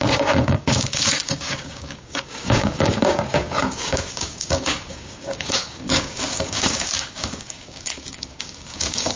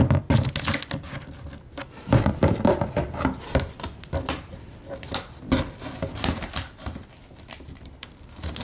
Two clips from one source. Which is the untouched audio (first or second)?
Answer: second